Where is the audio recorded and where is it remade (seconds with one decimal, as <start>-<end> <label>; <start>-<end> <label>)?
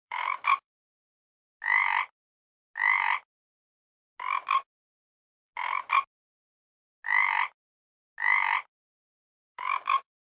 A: 0.0-1.2 remade; 1.2-4.9 recorded; 4.9-5.5 remade; 5.5-8.9 recorded; 8.9-10.2 remade